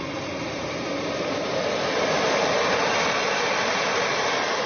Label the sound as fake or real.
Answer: fake